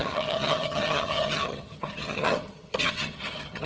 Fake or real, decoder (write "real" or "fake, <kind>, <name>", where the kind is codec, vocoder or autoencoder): fake, vocoder, HiFi-GAN